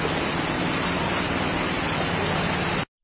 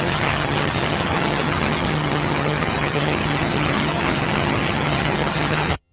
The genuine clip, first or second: first